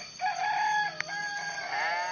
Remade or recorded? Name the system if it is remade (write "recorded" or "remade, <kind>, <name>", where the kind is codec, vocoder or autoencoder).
recorded